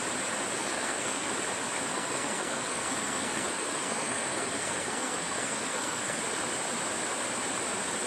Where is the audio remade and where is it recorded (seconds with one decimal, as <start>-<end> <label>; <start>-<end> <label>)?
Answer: 0.0-0.6 recorded; 0.6-1.3 remade; 1.3-1.9 recorded; 1.9-6.2 remade; 6.2-8.1 recorded